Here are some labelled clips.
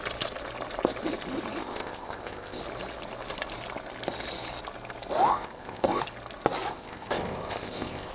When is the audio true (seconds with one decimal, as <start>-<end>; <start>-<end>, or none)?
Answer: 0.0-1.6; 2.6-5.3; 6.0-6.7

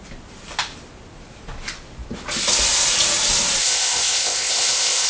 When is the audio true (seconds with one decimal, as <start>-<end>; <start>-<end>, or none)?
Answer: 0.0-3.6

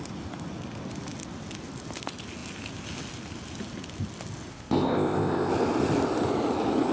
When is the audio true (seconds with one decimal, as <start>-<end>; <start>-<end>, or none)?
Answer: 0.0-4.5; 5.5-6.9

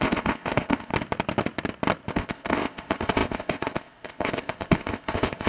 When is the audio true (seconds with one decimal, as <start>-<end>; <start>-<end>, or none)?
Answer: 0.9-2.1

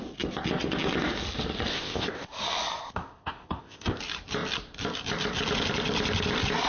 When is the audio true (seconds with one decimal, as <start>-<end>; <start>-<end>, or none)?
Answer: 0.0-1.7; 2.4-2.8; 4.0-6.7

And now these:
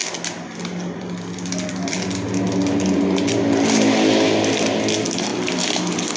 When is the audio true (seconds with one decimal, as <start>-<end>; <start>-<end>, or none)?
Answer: 0.0-6.2

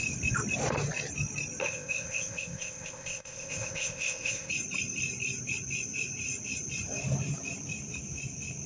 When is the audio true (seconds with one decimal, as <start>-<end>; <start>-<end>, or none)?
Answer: 0.0-1.6; 4.5-8.7